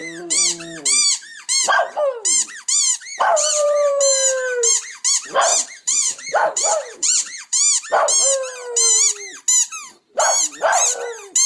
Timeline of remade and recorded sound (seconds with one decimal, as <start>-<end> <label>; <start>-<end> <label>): 0.0-3.3 recorded; 3.3-4.0 remade; 4.0-5.5 recorded; 5.5-7.6 remade; 7.6-11.5 recorded